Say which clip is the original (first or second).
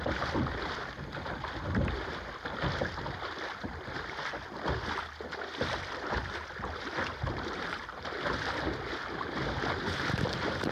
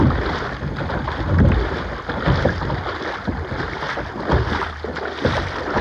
second